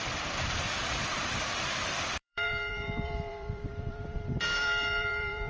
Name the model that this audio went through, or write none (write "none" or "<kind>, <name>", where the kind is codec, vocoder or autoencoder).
vocoder, BigVGAN v2